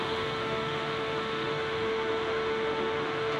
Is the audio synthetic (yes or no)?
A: yes